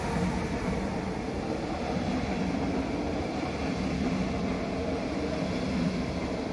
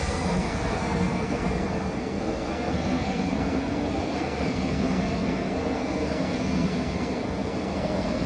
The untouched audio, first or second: first